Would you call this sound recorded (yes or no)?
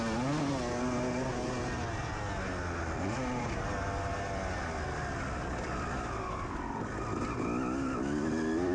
yes